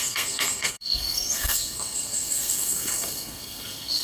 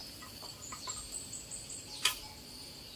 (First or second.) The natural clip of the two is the second